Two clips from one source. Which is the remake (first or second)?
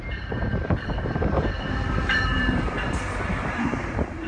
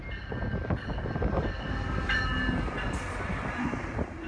first